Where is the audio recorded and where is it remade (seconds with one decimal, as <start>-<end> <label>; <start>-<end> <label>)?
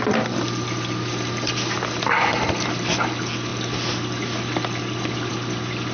0.0-5.9 recorded